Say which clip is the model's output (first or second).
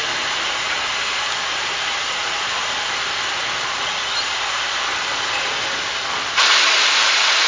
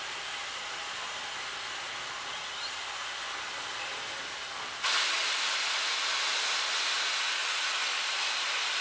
first